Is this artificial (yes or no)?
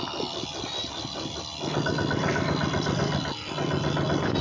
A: no